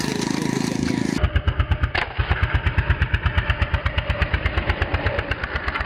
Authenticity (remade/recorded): recorded